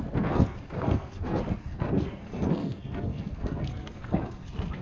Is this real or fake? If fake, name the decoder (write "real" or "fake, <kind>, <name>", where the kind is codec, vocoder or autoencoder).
fake, codec, SNAC